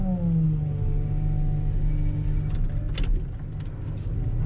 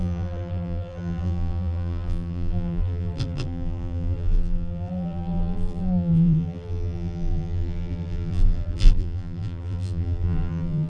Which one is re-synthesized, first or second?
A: second